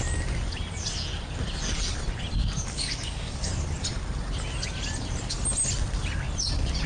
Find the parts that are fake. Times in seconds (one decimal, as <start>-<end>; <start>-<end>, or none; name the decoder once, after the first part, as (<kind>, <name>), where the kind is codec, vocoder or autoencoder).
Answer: 2.4-3.5 (codec, DAC)